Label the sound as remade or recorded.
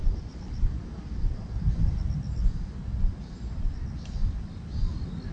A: recorded